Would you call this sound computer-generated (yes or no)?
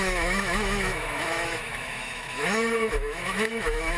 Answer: yes